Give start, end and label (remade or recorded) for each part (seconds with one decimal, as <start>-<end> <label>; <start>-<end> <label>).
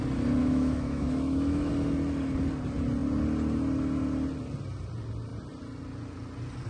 0.0-0.4 recorded; 0.4-1.7 remade; 1.7-6.7 recorded